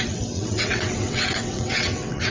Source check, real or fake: fake